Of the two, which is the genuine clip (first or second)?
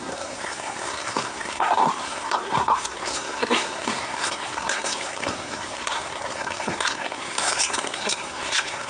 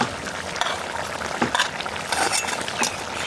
second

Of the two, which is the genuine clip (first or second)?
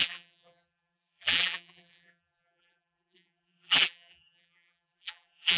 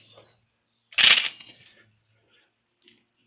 second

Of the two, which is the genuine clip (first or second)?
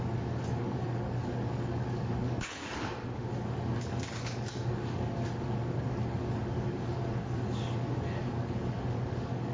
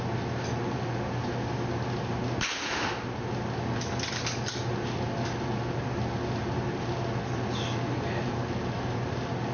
second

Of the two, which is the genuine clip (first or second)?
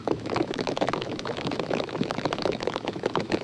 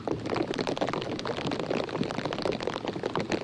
second